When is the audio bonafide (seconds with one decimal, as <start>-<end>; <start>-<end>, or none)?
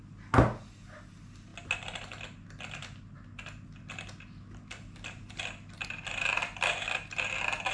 0.0-7.7